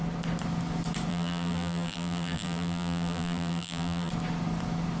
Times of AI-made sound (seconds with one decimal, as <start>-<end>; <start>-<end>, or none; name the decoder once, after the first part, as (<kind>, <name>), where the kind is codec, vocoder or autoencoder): 1.1-4.1 (vocoder, BigVGAN v2)